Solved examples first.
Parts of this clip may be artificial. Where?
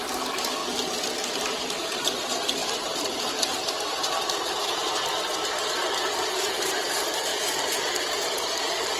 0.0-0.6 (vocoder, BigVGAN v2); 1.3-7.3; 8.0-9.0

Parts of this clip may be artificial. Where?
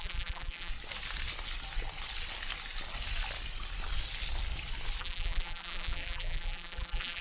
0.0-0.7 (vocoder, BigVGAN v2); 5.0-7.2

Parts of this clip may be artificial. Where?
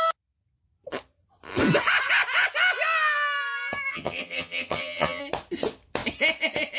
3.9-5.2 (vocoder, HiFi-GAN)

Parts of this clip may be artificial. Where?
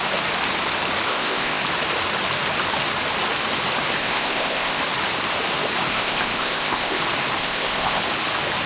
1.1-1.6 (codec, ZipCodec); 4.0-4.8; 5.9-7.0; 7.4-8.0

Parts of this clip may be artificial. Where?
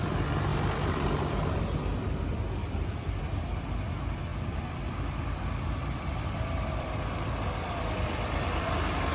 0.5-1.6 (vocoder, BigVGAN v2); 2.6-3.2; 4.3-8.7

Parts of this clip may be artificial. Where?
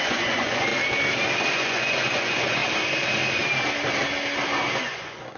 0.0-0.7 (vocoder, Vocos); 1.5-2.6; 4.8-5.4